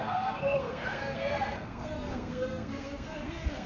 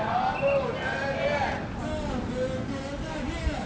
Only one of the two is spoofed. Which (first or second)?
first